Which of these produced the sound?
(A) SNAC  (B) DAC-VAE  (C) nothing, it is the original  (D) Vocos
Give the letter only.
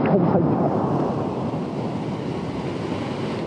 C